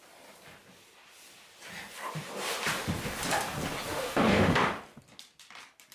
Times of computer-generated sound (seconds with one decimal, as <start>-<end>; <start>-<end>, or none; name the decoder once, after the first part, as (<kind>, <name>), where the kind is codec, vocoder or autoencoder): 3.9-4.7 (autoencoder, DAC-VAE)